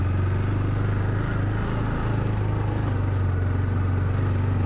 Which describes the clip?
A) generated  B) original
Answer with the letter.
B